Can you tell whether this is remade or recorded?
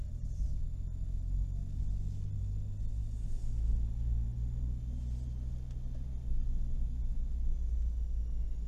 recorded